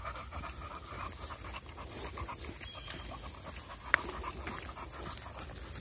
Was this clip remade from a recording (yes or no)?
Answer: no